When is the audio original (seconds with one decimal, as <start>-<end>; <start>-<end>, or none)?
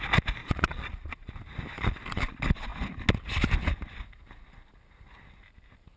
0.0-0.4; 1.3-6.0